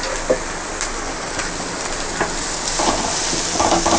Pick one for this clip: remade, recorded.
recorded